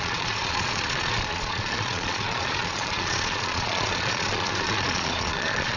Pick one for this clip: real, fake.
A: fake